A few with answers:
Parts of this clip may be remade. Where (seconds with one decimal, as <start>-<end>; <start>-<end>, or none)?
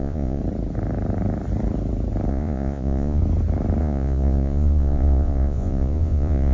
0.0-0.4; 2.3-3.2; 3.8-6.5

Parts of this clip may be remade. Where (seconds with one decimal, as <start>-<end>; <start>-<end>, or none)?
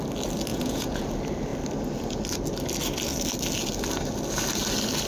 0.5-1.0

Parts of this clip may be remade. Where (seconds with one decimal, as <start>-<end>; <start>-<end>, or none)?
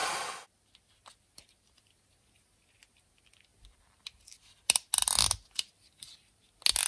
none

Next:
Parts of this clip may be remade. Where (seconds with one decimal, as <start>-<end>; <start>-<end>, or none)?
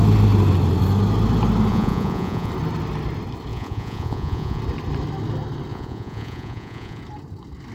1.7-2.5; 3.5-4.6; 5.7-7.0